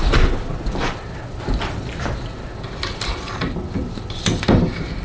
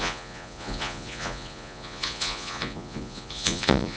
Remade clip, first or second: second